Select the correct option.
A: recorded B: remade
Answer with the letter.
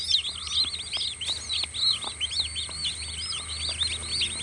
A